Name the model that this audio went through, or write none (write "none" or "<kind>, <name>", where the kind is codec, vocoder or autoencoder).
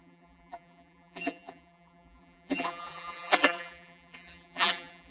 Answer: vocoder, BigVGAN v2